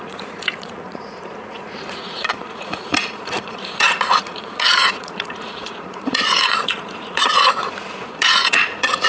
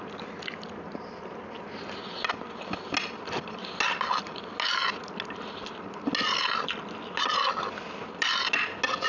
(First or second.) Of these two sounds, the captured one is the second